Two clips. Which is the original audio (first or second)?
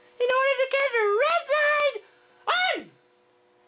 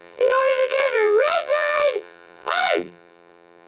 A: first